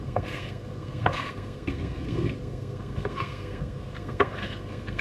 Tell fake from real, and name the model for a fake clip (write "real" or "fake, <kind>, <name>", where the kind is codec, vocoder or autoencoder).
fake, codec, SNAC